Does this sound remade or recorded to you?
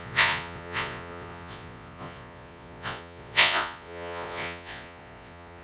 remade